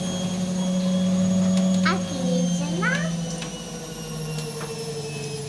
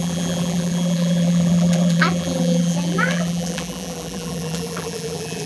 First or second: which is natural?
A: first